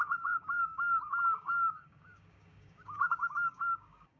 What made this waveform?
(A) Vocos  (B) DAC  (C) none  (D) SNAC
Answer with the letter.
B